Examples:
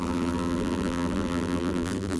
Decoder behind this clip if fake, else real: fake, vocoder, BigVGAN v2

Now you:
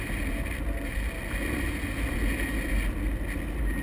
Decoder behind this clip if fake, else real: real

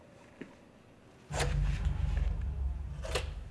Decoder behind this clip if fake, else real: real